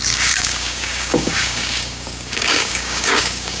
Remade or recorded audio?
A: remade